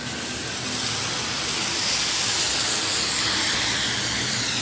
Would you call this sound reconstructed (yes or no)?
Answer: no